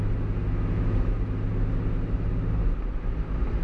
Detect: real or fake real